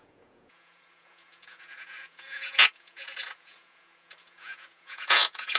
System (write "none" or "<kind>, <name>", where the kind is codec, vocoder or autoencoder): vocoder, Vocos